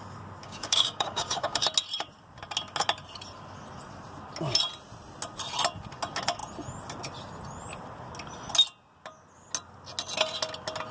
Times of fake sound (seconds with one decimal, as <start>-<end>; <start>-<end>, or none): 0.4-1.6